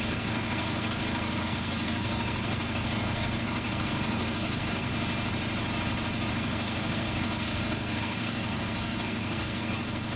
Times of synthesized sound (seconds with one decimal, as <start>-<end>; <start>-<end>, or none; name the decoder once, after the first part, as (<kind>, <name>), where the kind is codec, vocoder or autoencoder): 0.0-4.9 (codec, SNAC); 6.3-10.2

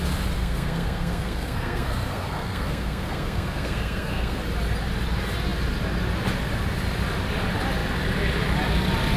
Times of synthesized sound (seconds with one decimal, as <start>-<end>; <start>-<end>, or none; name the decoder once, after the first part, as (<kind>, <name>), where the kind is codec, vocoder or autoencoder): 0.4-4.4 (codec, SNAC)

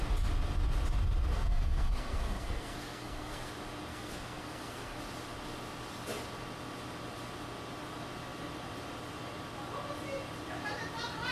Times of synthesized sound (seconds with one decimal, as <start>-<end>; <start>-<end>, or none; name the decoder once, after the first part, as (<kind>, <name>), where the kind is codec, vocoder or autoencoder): 1.3-3.5 (codec, SNAC); 3.9-5.0

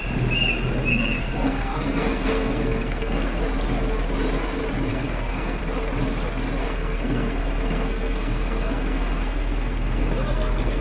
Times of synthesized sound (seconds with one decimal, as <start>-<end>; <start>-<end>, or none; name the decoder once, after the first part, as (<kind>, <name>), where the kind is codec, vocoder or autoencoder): 0.9-3.4 (codec, SNAC); 4.9-5.6; 6.6-10.8

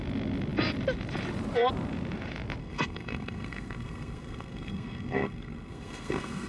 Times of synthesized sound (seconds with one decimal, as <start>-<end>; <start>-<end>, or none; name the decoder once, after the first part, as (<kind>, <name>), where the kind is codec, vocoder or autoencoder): 2.6-6.5 (codec, SNAC)

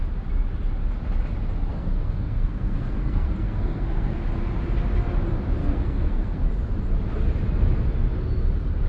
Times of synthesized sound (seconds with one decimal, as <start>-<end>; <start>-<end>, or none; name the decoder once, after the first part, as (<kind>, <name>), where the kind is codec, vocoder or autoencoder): 1.7-4.2 (codec, SNAC); 5.6-6.4

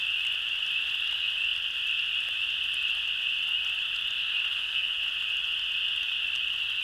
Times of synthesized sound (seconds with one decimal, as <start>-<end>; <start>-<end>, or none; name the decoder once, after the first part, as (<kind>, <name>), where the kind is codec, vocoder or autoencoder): 4.5-5.0 (codec, SNAC)